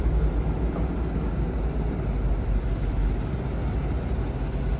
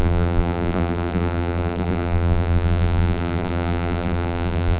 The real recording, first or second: first